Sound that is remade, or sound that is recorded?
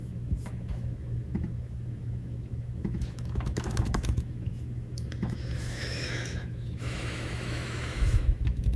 remade